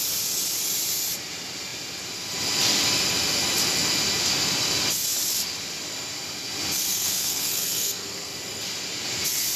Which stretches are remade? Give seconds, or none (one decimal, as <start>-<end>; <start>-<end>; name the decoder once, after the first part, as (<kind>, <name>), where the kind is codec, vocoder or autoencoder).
6.9-8.3 (codec, SNAC)